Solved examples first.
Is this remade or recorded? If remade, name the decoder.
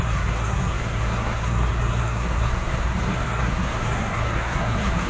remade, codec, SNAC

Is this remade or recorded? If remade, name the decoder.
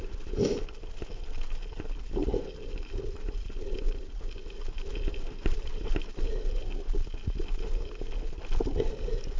recorded